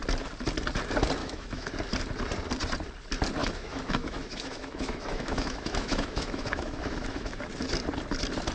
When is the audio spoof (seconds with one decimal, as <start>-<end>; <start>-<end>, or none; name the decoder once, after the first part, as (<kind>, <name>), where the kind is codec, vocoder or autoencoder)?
1.2-1.7 (autoencoder, DAC-VAE); 3.4-7.5